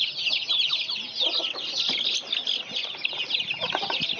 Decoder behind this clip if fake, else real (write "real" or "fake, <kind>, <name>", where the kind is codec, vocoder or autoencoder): real